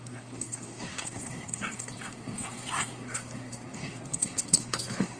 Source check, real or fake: fake